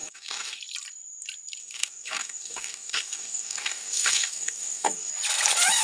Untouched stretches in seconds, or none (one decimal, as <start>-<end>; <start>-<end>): 0.6-1.6; 5.1-5.8